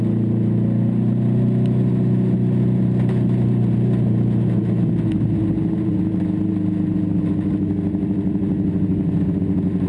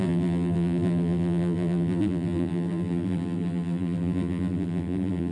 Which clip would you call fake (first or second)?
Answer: second